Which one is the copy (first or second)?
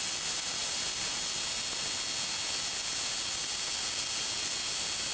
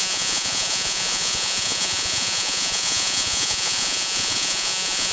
second